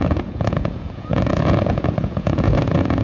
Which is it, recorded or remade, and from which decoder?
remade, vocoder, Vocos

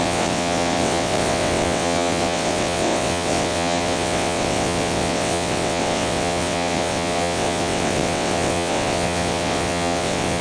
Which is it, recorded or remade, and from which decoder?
remade, vocoder, WaveNeXt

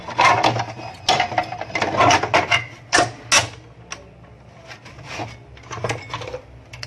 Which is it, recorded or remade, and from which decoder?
recorded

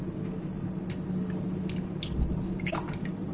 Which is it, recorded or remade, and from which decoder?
recorded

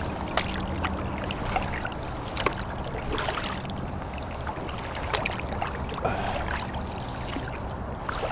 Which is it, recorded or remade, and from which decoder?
recorded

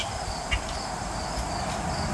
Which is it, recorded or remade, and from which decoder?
recorded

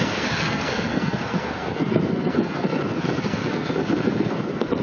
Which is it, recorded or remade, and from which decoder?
remade, codec, SNAC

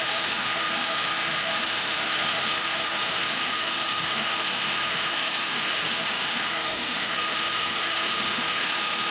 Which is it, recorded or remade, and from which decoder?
remade, autoencoder, DAC-VAE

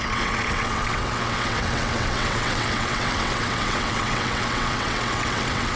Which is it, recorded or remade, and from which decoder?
remade, vocoder, WaveNeXt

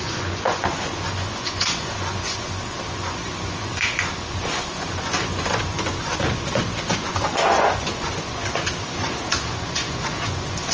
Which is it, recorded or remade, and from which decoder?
remade, vocoder, Vocos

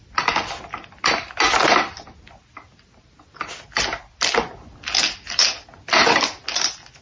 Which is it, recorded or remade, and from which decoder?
recorded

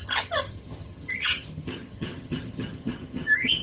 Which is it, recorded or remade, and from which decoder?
remade, vocoder, HiFi-GAN